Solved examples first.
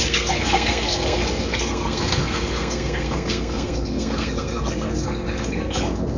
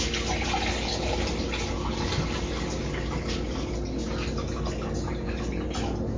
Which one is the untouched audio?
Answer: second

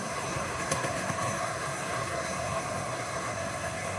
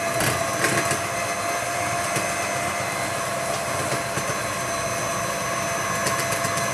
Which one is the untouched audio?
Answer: second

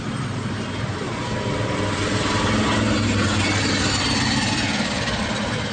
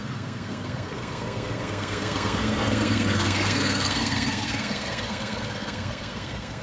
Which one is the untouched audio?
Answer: first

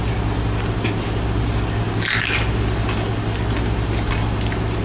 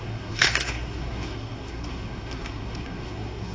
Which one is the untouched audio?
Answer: first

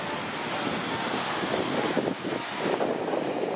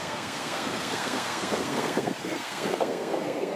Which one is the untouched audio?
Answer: first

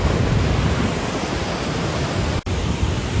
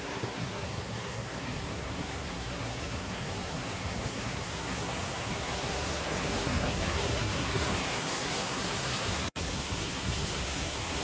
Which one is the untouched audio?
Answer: first